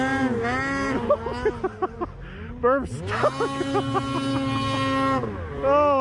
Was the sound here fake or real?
real